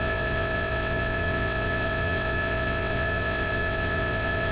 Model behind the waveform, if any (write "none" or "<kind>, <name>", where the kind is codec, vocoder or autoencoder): vocoder, WaveNeXt